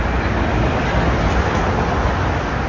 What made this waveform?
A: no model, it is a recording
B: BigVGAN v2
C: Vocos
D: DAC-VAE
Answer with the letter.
A